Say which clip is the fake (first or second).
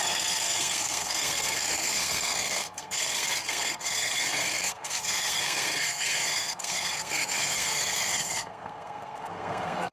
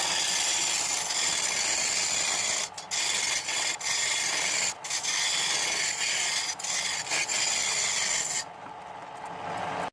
first